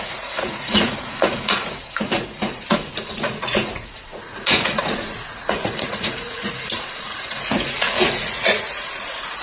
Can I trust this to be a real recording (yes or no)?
no